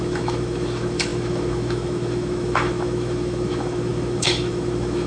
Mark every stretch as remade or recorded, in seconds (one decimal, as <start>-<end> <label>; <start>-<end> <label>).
0.0-5.1 remade